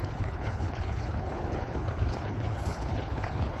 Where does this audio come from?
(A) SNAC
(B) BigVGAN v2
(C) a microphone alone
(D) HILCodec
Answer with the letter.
D